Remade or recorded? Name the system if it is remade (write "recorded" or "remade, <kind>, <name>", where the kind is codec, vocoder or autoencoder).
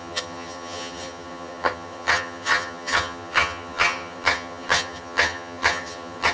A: remade, vocoder, HiFi-GAN